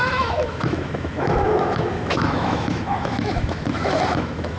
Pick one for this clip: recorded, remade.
remade